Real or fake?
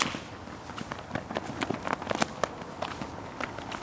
real